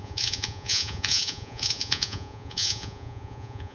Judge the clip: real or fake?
fake